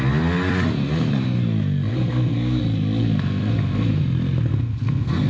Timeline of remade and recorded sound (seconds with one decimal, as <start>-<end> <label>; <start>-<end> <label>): 0.0-1.9 recorded; 1.9-2.6 remade; 2.6-3.0 recorded; 3.0-4.0 remade; 4.0-4.5 recorded; 4.5-5.3 remade